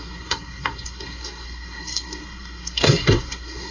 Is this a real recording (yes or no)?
no